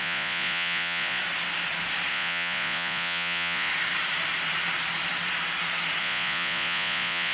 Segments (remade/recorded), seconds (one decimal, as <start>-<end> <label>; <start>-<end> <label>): 0.0-1.2 remade; 1.2-2.1 recorded; 2.1-3.7 remade; 3.7-6.0 recorded; 6.0-7.3 remade